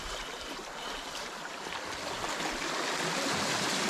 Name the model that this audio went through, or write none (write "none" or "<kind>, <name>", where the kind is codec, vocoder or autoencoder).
none